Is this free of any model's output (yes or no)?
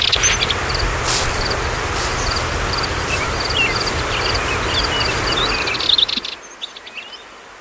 yes